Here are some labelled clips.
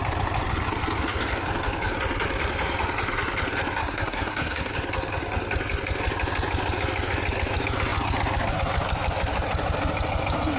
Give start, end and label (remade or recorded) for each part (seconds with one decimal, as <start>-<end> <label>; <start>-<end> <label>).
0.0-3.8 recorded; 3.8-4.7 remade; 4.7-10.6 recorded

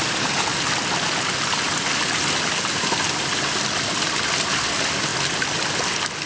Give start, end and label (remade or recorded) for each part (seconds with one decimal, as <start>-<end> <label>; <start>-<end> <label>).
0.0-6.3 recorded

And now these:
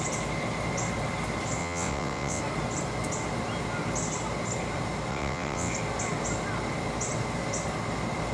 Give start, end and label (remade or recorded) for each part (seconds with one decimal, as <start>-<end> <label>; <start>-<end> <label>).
0.0-1.6 recorded; 1.6-2.4 remade; 2.4-5.1 recorded; 5.1-5.7 remade; 5.7-8.3 recorded